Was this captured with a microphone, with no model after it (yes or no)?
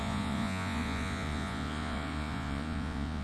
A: no